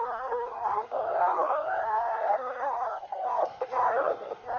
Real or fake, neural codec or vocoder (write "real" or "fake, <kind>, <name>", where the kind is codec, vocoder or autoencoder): fake, codec, SNAC